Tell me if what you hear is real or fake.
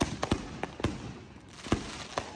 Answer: real